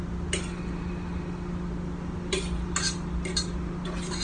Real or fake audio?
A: real